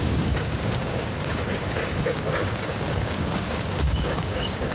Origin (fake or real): fake